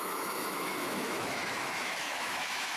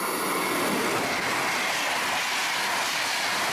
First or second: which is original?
second